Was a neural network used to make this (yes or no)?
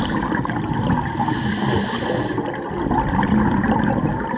no